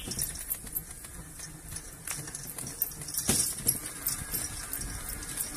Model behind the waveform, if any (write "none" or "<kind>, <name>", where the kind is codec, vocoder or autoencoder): none